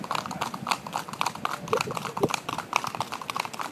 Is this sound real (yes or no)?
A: yes